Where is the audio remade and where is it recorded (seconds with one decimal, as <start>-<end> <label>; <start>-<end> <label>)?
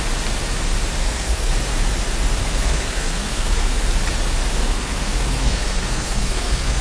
0.0-1.0 recorded; 1.0-1.5 remade; 1.5-2.4 recorded; 2.4-3.8 remade; 3.8-4.6 recorded; 4.6-6.8 remade